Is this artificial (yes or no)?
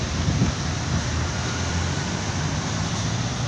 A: yes